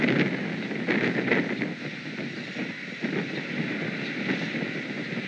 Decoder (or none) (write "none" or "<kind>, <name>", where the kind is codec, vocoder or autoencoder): none